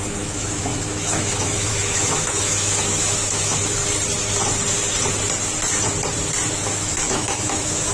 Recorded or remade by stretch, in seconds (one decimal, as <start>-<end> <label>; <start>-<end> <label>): 0.0-3.8 remade; 3.8-6.5 recorded; 6.5-7.9 remade